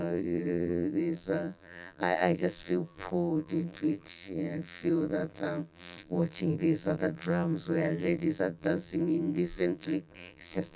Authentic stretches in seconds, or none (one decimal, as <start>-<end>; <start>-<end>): none